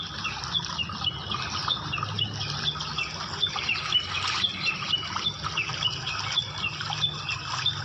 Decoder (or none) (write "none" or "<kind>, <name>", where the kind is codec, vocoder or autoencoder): none